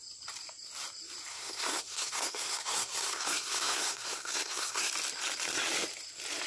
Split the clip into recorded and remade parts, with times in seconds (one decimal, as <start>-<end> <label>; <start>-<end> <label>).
0.0-1.3 recorded; 1.3-4.9 remade; 4.9-6.5 recorded